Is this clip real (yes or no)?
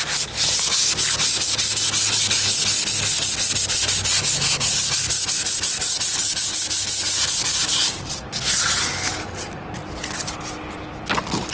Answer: yes